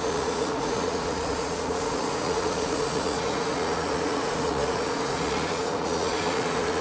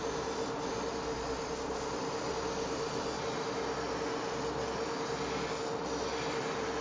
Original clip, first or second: second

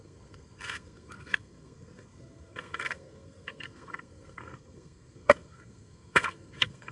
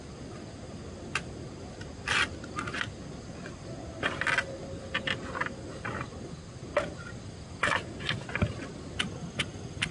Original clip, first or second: second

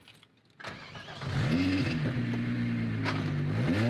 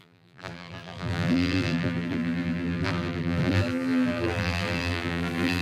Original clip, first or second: first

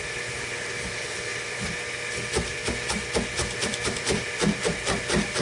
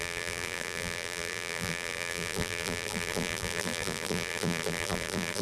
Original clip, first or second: first